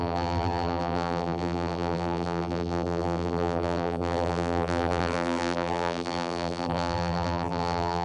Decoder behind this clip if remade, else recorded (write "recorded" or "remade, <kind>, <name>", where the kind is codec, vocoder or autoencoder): remade, vocoder, BigVGAN v2